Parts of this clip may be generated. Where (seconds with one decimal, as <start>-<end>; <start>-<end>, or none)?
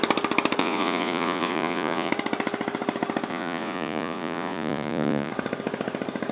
0.6-2.1; 3.3-5.3